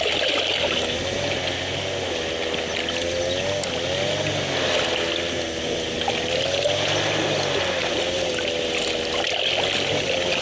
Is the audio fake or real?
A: real